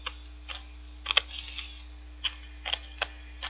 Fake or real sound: real